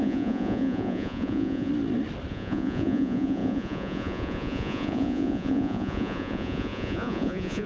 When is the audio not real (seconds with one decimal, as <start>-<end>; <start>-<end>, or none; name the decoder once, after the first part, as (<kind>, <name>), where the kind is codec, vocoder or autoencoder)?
0.0-1.7 (vocoder, Vocos); 2.3-7.7